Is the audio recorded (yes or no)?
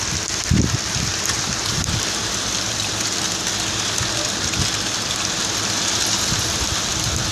no